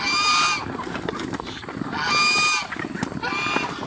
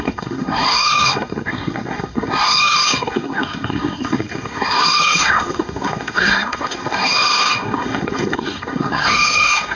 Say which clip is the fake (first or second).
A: second